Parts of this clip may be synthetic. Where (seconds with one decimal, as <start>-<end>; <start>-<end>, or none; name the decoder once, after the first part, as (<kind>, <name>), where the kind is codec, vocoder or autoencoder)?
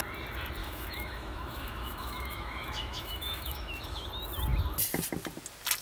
0.6-4.1 (autoencoder, DAC-VAE)